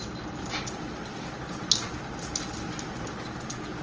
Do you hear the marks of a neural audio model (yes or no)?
no